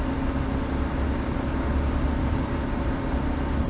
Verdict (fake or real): real